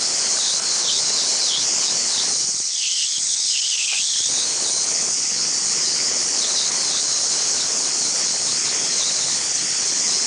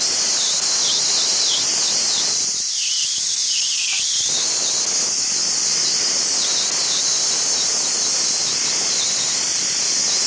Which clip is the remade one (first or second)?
first